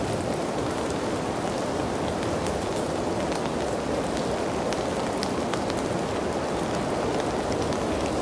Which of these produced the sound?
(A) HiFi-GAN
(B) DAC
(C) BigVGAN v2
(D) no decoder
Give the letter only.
D